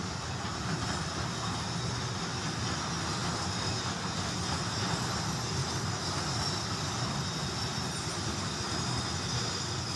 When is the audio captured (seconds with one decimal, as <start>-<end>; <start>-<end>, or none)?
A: 0.0-10.0